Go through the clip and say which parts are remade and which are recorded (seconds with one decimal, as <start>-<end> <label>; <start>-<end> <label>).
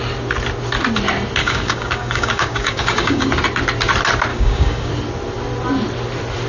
0.0-1.4 recorded; 1.4-3.3 remade; 3.3-4.3 recorded; 4.3-4.9 remade; 4.9-6.5 recorded